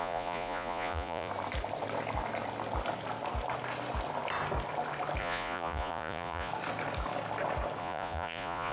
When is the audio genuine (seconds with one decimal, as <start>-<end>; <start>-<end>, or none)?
1.3-5.2; 6.5-7.8